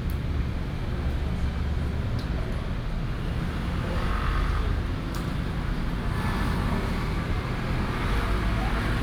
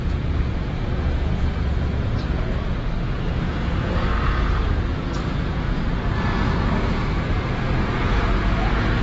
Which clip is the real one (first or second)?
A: first